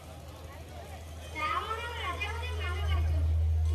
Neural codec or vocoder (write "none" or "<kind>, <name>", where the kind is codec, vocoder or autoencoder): none